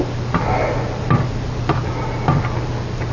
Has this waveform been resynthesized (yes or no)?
no